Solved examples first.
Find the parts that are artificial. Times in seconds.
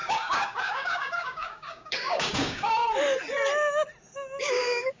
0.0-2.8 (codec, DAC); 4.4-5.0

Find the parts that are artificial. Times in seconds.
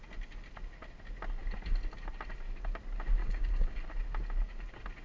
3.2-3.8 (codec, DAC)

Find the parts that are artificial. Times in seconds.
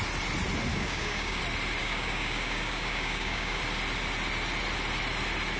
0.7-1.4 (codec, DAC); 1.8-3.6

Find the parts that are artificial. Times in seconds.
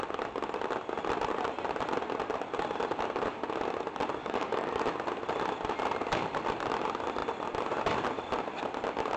4.2-4.8 (codec, DAC)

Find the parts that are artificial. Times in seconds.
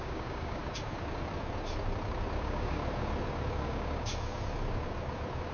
0.0-0.6 (codec, DAC); 2.4-2.8; 3.6-4.1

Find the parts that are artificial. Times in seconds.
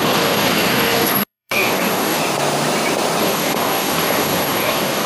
0.0-2.2 (codec, DAC); 3.2-5.1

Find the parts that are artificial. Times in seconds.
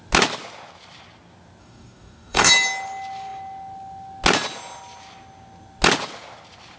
1.6-2.5 (codec, DAC)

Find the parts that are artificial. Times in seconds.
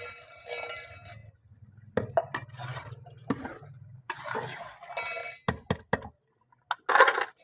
none